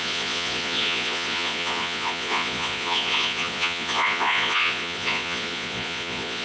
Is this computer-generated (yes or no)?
yes